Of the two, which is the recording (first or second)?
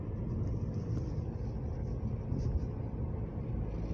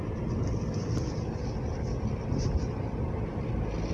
first